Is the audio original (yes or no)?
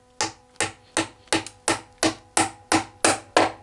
yes